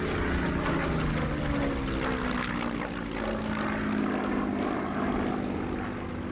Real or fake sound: real